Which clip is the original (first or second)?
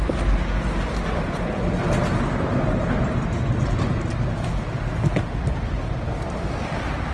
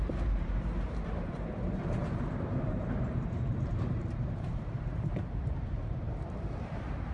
first